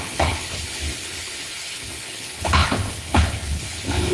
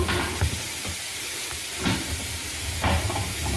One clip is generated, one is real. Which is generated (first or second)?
first